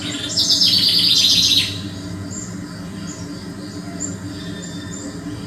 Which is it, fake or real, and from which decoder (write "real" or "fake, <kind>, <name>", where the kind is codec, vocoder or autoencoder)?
real